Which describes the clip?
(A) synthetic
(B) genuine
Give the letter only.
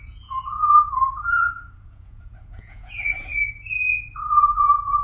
A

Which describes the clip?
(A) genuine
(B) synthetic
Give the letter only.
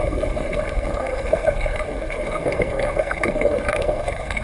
B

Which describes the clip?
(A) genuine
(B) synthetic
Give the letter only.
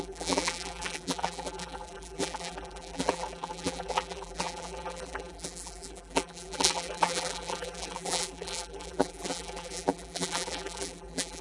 B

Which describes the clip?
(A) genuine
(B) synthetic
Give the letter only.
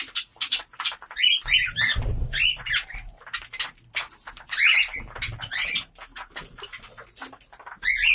A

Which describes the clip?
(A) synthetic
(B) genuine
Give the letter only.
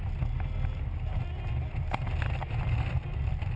B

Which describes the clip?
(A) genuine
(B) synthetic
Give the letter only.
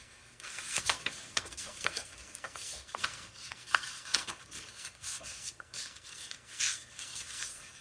B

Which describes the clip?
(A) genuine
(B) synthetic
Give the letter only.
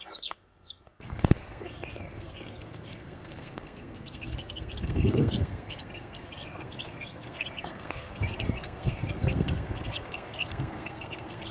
B